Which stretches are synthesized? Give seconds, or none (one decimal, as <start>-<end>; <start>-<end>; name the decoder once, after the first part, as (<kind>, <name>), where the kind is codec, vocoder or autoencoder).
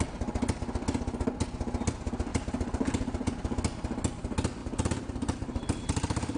2.3-3.3 (vocoder, BigVGAN v2); 4.6-6.4